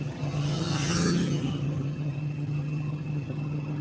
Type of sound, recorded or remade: remade